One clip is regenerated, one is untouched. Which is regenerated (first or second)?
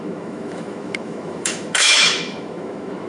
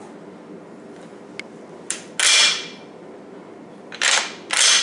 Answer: first